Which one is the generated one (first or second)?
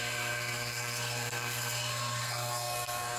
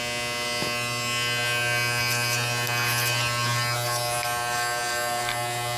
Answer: first